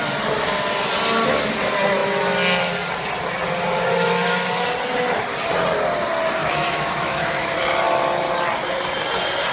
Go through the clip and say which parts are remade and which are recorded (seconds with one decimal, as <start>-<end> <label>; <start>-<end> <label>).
0.0-6.4 recorded; 6.4-7.5 remade; 7.5-9.5 recorded